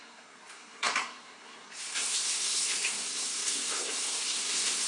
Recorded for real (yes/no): no